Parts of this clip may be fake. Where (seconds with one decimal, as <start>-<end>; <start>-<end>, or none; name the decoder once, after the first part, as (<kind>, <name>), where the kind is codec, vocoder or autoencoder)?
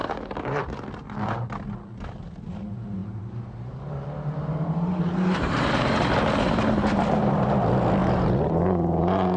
0.0-0.6 (vocoder, BigVGAN v2); 3.0-3.9; 4.4-5.9; 8.0-9.4